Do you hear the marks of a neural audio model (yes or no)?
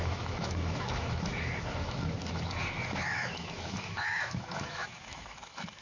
yes